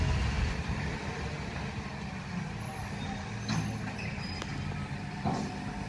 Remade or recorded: recorded